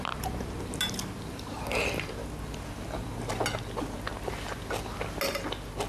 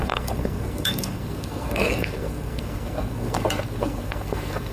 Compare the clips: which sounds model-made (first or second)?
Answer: second